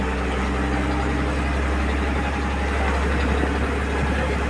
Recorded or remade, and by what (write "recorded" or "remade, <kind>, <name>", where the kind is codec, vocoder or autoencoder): recorded